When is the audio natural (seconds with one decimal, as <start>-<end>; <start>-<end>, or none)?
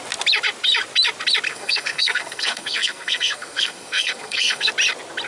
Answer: 0.0-1.5; 4.7-5.3